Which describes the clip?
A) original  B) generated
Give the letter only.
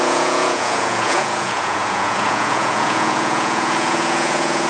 B